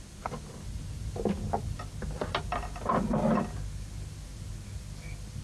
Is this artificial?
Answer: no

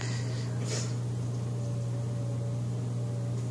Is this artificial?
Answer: no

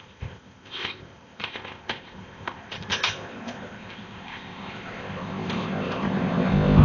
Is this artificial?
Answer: yes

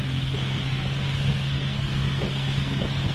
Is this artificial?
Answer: yes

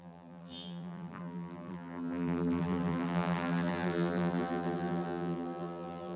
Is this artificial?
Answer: yes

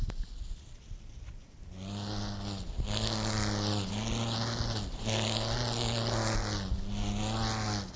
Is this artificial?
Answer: no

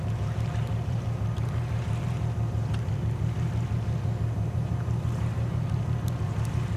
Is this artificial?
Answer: yes